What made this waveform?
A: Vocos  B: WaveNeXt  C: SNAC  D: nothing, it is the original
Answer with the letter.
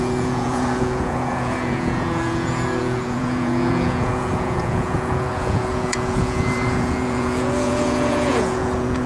A